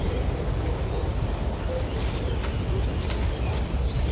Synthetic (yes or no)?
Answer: no